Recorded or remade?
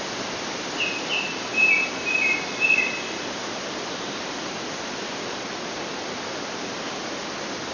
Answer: recorded